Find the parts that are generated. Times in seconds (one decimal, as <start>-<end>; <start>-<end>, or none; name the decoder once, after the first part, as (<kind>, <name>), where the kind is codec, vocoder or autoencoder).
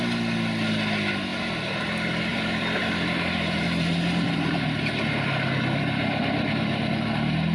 1.3-1.9 (vocoder, BigVGAN v2); 2.3-6.5